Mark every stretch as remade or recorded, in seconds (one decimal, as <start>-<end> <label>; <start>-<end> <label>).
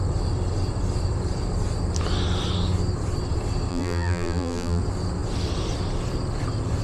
0.0-3.7 recorded; 3.7-4.8 remade; 4.8-6.8 recorded